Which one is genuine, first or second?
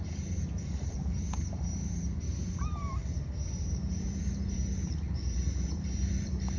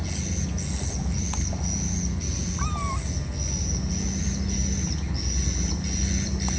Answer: second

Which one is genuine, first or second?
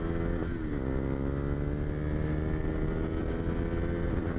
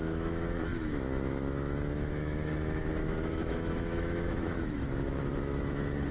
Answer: first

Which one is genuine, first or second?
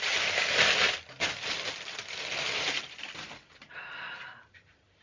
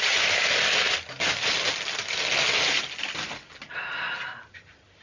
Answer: second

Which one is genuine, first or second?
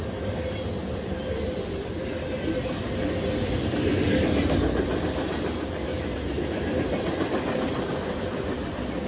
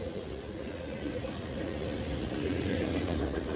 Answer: first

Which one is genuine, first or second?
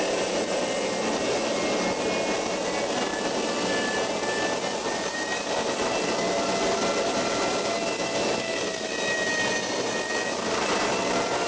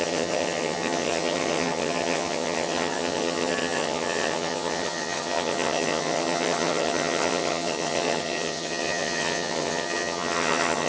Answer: first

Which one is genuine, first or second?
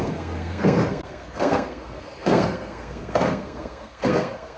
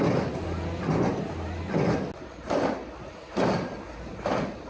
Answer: second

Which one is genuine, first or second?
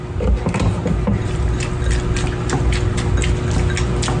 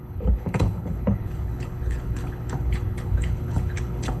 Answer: first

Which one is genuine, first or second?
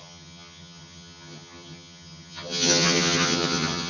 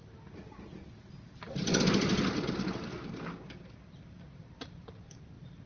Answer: second